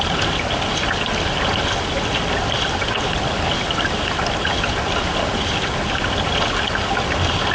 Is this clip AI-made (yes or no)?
no